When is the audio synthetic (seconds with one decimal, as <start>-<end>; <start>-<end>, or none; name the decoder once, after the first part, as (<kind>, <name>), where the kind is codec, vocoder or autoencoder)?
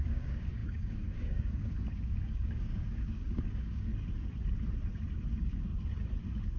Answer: 0.0-3.9 (codec, DAC); 5.3-5.7